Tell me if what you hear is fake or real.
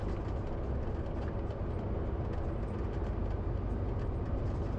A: real